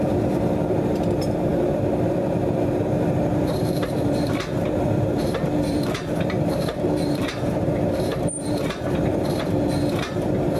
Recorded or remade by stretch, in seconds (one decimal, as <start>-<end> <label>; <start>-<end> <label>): 0.0-10.6 remade